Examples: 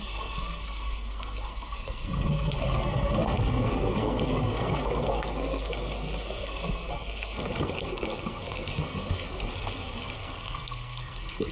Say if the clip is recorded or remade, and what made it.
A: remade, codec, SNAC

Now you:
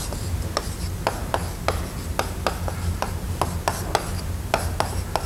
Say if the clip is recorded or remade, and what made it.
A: recorded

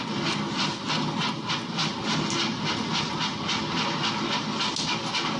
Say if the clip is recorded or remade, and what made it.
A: recorded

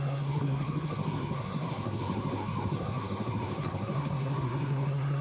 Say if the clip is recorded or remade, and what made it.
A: remade, codec, SNAC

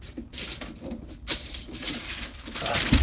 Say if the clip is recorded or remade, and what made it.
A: remade, vocoder, BigVGAN v2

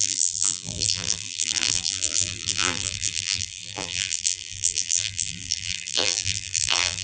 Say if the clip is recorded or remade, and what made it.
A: remade, vocoder, BigVGAN v2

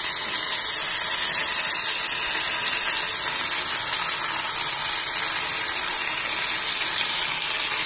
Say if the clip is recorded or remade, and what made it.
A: recorded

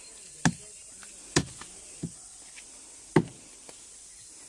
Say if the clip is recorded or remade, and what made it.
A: recorded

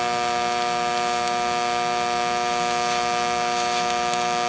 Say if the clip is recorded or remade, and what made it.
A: recorded